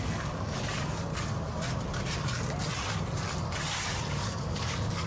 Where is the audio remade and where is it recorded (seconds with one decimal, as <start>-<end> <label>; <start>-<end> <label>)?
0.0-1.1 remade; 1.1-4.2 recorded; 4.2-5.1 remade